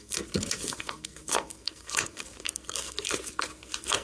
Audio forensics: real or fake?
fake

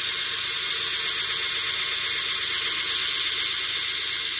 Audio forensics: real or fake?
real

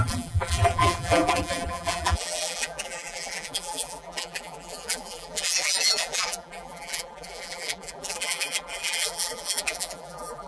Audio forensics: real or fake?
fake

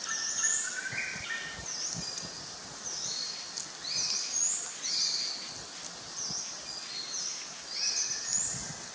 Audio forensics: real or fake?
real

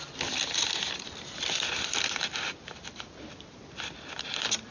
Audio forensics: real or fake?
real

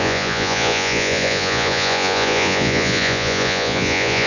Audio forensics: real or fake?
fake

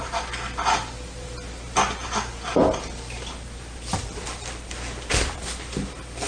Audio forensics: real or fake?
real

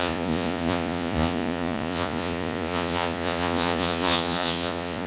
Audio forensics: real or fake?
fake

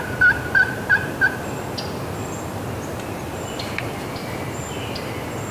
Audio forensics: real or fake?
real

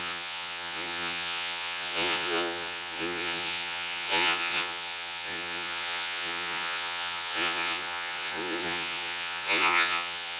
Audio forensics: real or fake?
fake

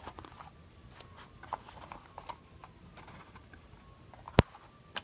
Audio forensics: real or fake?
real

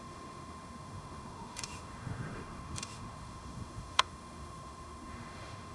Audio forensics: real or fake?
fake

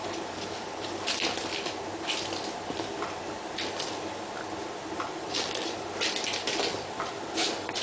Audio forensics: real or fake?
real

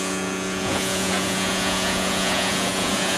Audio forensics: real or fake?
fake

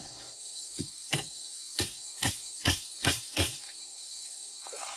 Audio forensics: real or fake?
fake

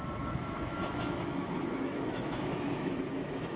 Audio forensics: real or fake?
fake